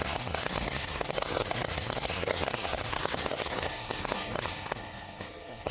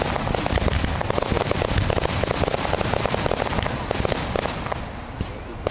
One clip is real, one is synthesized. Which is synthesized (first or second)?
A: first